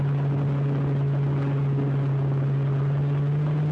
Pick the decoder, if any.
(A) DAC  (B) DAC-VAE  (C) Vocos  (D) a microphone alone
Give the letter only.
D